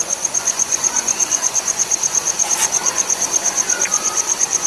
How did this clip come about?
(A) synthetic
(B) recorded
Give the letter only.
A